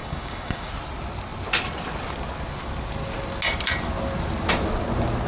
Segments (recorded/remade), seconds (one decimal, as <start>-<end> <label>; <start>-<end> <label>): 0.0-0.7 remade; 0.7-5.3 recorded